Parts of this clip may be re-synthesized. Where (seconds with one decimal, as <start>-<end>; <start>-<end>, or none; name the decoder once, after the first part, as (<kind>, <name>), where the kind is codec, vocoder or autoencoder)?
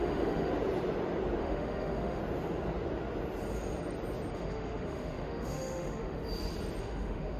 0.0-0.5 (autoencoder, DAC-VAE); 1.4-2.2; 4.3-6.2; 6.8-7.4